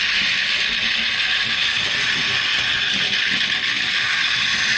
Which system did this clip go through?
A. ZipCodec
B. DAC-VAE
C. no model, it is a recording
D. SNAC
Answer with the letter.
C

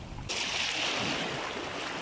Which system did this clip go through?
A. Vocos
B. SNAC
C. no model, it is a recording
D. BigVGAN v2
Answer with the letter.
C